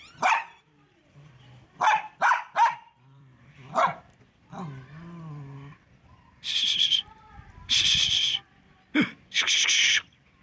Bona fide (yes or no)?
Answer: no